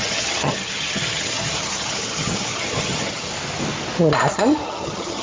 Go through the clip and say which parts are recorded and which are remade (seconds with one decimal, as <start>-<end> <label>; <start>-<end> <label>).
0.0-3.3 remade; 3.3-4.3 recorded; 4.3-5.2 remade